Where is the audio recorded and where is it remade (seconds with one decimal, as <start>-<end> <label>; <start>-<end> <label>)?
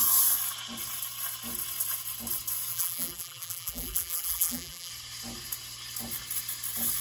0.0-2.7 recorded; 2.7-4.9 remade; 4.9-7.0 recorded